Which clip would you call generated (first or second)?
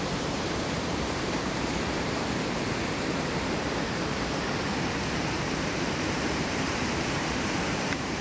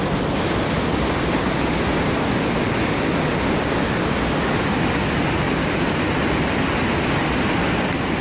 first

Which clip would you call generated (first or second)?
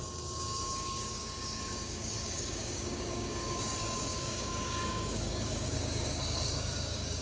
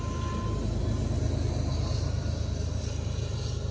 first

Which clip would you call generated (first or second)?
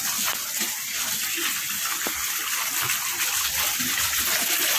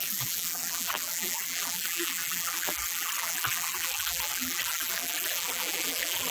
second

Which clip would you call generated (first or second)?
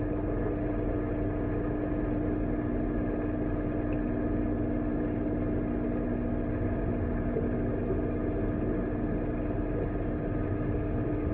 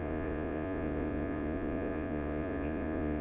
second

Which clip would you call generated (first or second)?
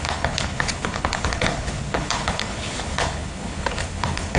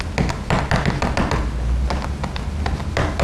first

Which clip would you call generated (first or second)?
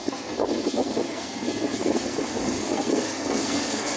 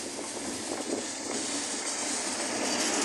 first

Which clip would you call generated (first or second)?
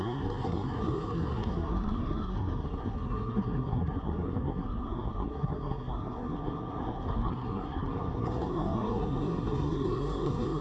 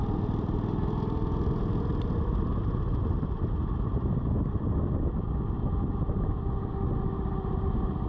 first